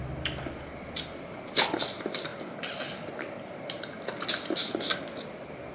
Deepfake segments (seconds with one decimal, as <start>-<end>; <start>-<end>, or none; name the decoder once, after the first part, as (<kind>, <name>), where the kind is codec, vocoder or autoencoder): none